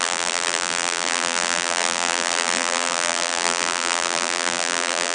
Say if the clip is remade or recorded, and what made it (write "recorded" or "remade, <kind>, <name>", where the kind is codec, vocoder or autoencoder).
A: remade, vocoder, BigVGAN v2